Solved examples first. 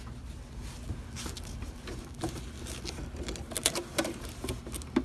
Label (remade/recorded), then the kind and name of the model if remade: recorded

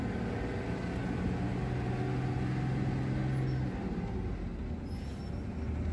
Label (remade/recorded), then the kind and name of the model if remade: recorded